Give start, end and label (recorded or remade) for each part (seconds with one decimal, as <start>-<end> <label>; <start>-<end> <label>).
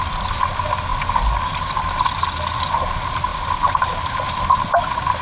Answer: 0.0-5.2 recorded